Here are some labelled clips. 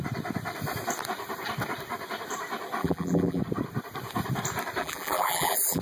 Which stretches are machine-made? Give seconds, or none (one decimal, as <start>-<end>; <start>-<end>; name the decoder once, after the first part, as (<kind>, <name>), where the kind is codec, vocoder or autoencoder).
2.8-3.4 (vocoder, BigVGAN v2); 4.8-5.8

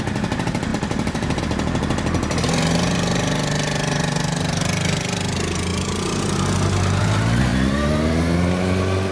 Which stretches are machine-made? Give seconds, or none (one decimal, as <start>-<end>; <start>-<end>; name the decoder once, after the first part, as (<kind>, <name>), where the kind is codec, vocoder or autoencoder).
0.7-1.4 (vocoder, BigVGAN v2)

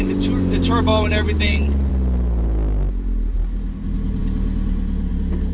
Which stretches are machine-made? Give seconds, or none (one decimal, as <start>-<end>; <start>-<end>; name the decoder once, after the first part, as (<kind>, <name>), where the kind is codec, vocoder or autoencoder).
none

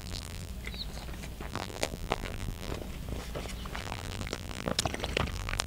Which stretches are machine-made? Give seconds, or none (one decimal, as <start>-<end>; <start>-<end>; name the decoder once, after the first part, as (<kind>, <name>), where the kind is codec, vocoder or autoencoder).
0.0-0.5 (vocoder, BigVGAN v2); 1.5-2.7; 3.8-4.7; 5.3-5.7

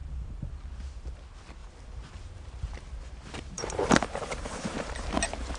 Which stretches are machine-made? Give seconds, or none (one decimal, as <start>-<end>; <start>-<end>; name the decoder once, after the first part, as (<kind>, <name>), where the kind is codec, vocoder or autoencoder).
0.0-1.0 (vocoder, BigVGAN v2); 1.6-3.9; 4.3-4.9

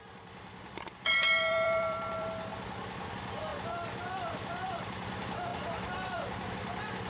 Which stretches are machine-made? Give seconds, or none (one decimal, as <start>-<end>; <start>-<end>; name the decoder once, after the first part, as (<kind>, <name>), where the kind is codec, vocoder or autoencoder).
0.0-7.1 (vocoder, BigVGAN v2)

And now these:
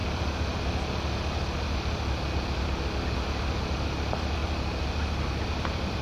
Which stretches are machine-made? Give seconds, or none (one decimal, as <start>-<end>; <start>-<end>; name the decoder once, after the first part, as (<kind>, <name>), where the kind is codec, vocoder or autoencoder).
3.6-4.4 (vocoder, BigVGAN v2); 5.0-6.0

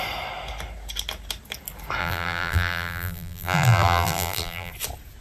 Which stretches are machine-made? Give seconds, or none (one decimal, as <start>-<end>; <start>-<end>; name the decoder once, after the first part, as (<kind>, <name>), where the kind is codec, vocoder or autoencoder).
2.0-4.7 (vocoder, BigVGAN v2)